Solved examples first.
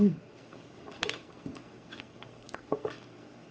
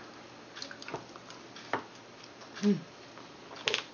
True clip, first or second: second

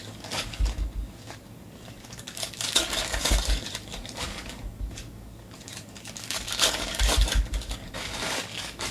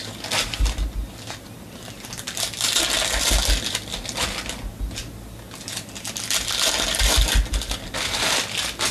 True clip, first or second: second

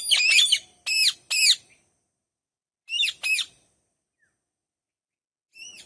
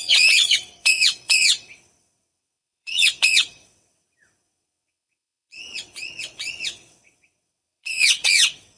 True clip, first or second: first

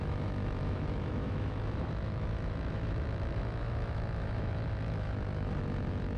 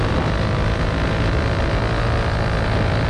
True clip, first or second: second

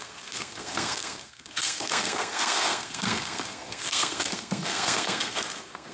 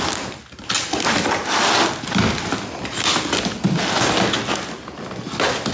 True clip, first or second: second